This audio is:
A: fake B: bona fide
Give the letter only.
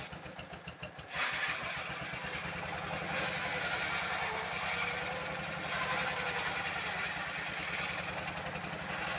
B